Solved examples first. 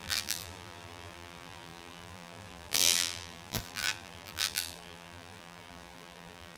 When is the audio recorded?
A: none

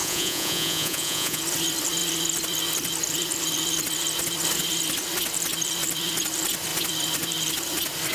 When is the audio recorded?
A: 1.4-8.1

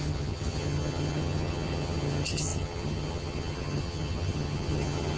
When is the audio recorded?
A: none

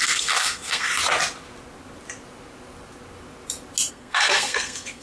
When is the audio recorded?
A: 0.9-3.9